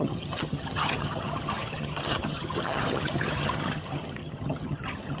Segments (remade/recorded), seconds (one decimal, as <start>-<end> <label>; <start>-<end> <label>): 0.0-5.2 remade